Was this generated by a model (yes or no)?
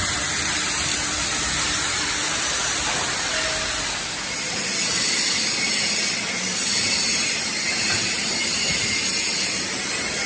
yes